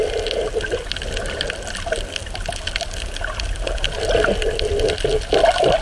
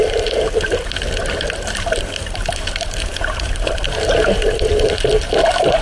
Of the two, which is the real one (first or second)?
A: first